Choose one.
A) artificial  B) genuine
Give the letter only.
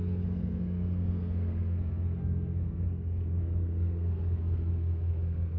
A